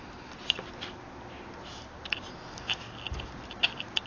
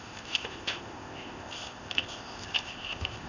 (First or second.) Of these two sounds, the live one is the first